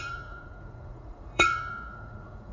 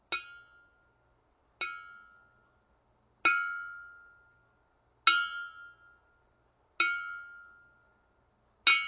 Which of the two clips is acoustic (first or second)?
second